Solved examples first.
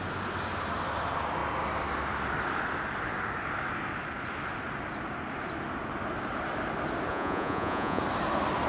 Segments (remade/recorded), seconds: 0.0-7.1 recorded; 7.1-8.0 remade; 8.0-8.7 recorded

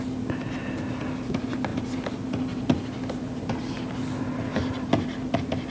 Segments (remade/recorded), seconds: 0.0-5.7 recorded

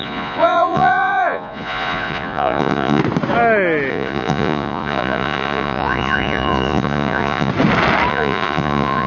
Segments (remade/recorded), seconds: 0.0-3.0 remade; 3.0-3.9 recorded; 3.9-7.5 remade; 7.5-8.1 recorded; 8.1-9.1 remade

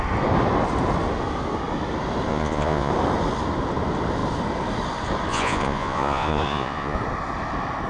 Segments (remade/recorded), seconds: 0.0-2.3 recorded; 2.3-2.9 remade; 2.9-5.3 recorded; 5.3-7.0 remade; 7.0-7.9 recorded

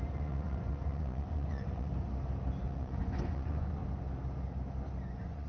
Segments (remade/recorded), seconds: 0.0-1.9 remade; 1.9-2.6 recorded; 2.6-3.8 remade; 3.8-5.1 recorded; 5.1-5.5 remade

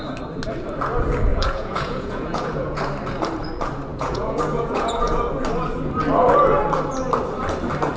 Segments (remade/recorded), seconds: 0.0-1.3 recorded; 1.3-2.8 remade; 2.8-3.9 recorded; 3.9-5.2 remade; 5.2-8.0 recorded

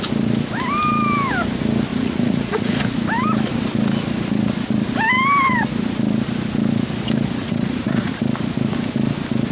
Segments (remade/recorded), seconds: 0.0-1.9 recorded; 1.9-2.8 remade; 2.8-7.4 recorded; 7.4-8.1 remade; 8.1-9.5 recorded